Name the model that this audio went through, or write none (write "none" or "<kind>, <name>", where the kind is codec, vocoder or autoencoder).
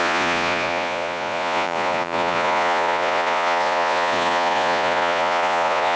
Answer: vocoder, Vocos